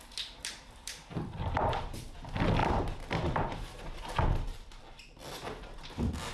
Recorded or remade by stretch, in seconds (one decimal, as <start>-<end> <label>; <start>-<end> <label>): 0.0-0.4 recorded; 0.4-1.6 remade; 1.6-6.3 recorded